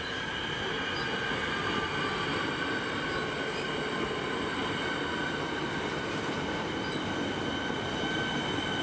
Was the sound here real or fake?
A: real